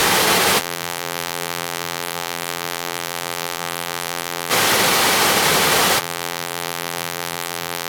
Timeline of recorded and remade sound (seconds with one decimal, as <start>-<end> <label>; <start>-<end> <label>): 0.0-0.6 recorded; 0.6-4.5 remade; 4.5-6.0 recorded; 6.0-7.9 remade